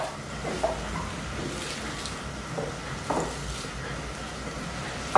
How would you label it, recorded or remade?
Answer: recorded